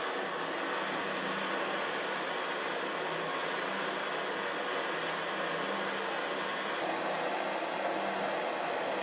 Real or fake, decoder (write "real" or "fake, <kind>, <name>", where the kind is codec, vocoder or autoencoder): real